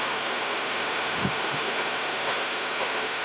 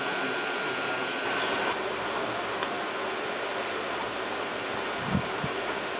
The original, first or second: second